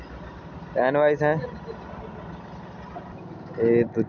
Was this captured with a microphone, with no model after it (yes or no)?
yes